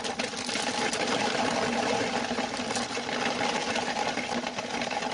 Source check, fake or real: real